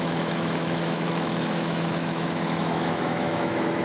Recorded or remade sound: remade